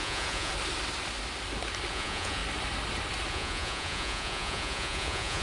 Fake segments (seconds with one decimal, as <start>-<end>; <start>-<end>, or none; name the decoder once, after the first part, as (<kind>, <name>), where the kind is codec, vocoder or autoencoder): 0.0-0.5 (vocoder, Vocos); 1.9-2.4; 3.3-5.4